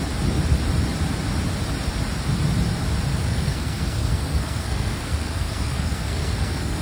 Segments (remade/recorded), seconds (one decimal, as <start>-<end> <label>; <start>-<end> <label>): 0.0-3.1 recorded; 3.1-6.8 remade